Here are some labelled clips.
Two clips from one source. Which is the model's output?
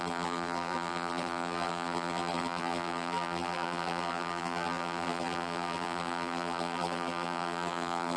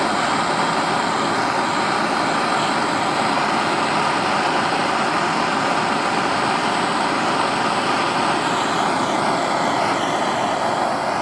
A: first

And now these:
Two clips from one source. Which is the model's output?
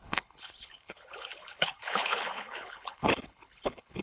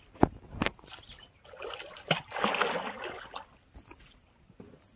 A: first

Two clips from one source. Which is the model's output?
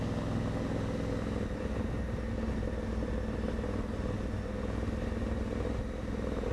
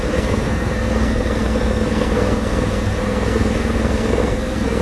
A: second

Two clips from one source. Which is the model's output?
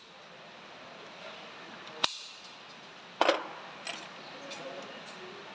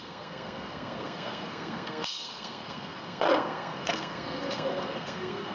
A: second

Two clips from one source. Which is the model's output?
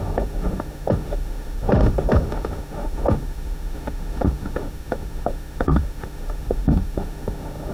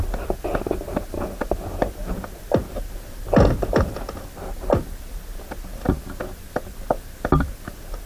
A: first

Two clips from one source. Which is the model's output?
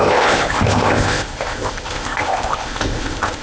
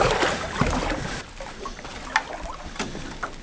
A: first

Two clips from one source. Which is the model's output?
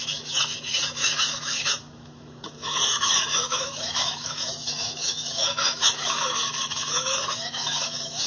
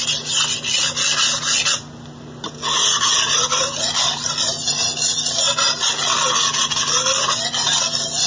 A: first